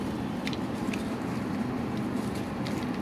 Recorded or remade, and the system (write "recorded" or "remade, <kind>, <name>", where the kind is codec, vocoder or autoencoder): recorded